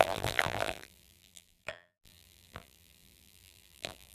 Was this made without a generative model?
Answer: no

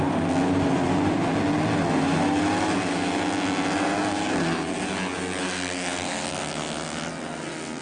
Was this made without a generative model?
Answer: yes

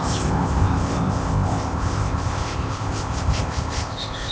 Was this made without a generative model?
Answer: no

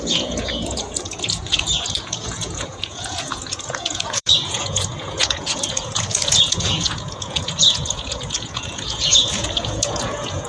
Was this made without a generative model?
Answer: no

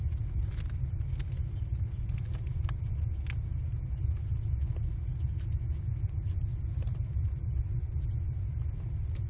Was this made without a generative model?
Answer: yes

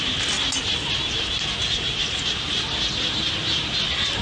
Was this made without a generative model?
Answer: yes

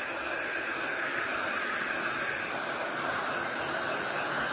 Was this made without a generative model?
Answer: yes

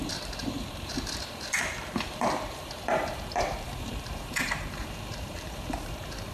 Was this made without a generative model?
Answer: no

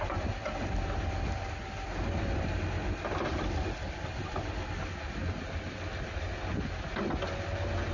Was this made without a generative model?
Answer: yes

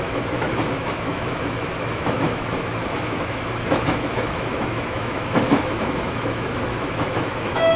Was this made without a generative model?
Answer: no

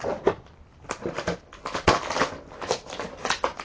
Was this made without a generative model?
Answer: yes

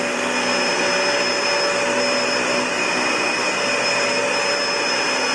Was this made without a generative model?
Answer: yes